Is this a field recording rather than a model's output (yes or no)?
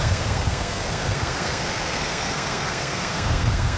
no